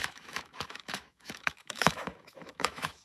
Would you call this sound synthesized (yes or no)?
yes